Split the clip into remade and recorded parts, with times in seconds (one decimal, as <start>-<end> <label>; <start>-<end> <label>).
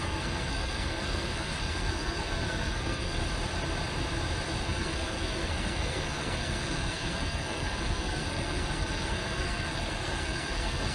0.0-3.2 remade; 3.2-4.6 recorded; 4.6-10.9 remade